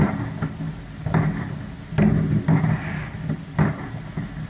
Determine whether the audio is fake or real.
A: real